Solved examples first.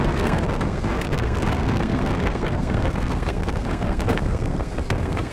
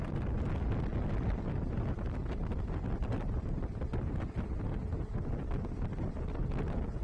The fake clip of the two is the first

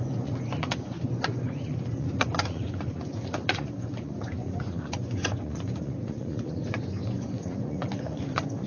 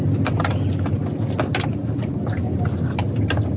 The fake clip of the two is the first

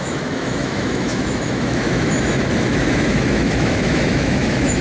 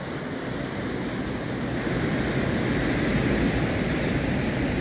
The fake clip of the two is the first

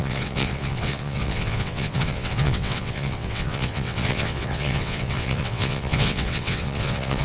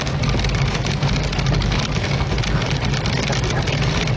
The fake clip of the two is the first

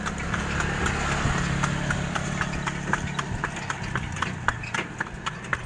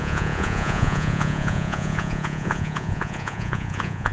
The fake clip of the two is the second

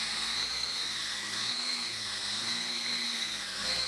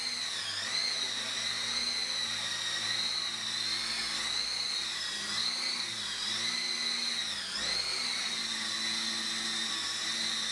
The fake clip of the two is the first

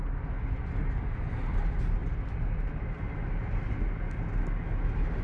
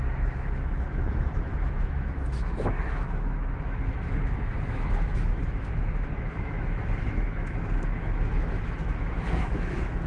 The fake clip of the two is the second